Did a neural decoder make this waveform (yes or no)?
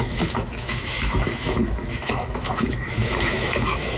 yes